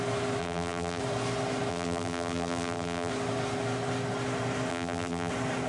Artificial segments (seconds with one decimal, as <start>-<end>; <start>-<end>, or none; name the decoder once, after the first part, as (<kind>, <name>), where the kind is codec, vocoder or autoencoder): 0.4-1.0 (vocoder, BigVGAN v2); 1.7-3.1; 4.7-5.3